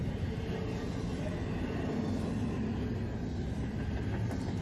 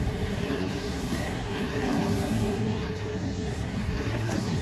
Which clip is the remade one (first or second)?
second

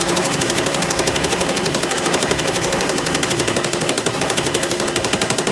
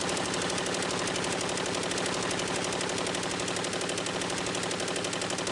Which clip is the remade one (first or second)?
first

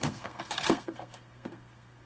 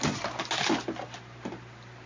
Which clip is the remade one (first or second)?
first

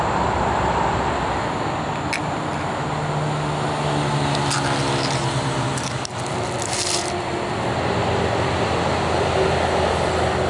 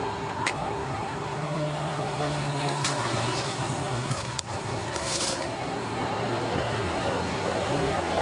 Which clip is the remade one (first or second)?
second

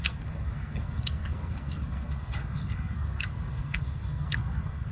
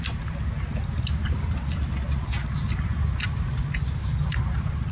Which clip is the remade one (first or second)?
first